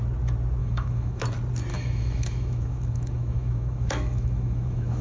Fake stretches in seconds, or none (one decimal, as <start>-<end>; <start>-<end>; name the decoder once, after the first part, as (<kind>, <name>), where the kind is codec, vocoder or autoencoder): 0.6-1.2 (autoencoder, DAC-VAE); 1.7-5.0